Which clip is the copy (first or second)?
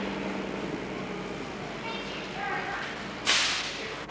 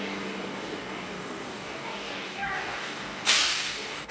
second